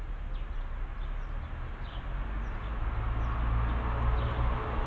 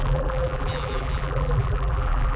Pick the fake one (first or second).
second